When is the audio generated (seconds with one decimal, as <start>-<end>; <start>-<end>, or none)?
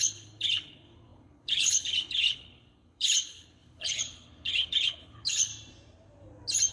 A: 0.0-5.5